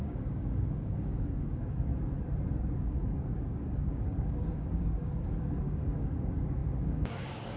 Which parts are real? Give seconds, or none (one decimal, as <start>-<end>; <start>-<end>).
1.9-2.6